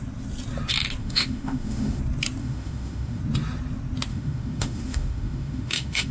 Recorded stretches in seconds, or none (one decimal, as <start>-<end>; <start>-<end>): 0.0-1.0; 2.0-2.4; 3.2-4.1